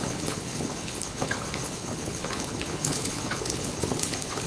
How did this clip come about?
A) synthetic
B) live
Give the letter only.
A